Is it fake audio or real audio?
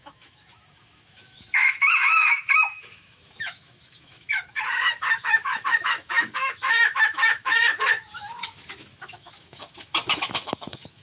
fake